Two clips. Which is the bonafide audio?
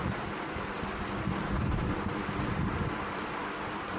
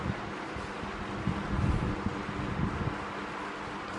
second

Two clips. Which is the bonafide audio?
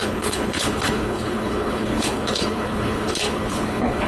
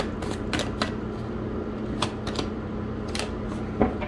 second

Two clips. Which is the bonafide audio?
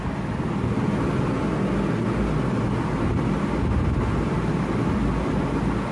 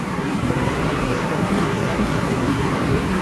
first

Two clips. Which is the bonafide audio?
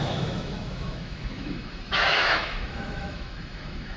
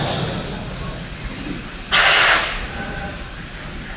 second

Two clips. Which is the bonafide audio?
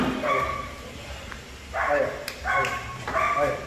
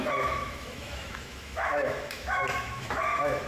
first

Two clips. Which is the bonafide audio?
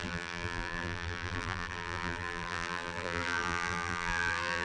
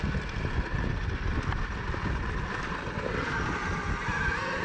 second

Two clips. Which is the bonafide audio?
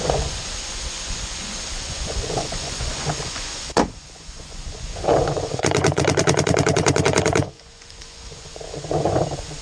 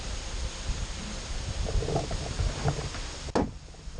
second